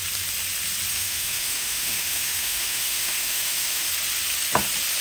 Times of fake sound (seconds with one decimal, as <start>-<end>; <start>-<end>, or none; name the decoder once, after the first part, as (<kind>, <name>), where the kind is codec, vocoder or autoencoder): 0.9-3.9 (autoencoder, DAC-VAE)